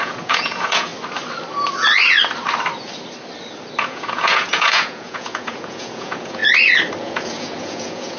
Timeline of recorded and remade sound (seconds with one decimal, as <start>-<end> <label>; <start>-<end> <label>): 0.0-0.9 remade; 0.9-3.8 recorded; 3.8-6.4 remade; 6.4-7.0 recorded; 7.0-8.2 remade